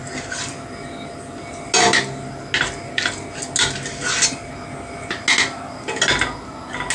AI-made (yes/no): no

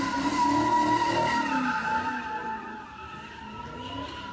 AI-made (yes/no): no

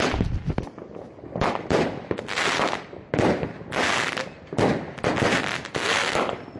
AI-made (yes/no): no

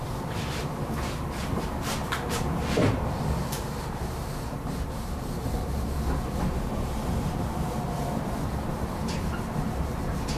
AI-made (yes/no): yes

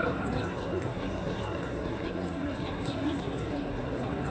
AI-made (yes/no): yes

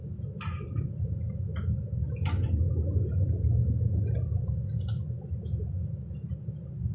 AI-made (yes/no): no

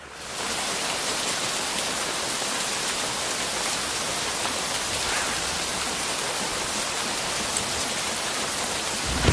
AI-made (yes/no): no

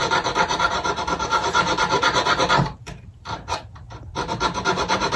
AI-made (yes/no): yes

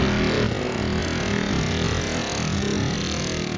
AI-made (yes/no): no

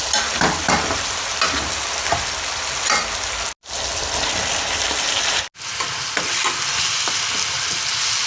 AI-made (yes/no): no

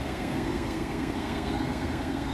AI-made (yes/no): yes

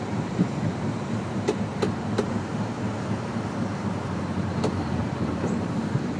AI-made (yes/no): yes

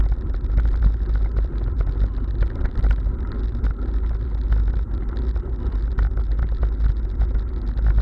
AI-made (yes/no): no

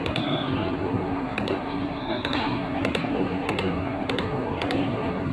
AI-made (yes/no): yes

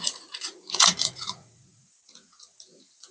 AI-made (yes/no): yes